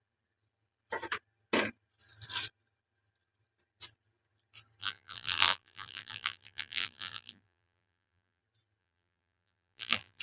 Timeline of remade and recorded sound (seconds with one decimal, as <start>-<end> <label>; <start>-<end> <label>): 0.0-4.8 recorded; 4.8-8.4 remade; 8.4-8.8 recorded; 8.8-10.2 remade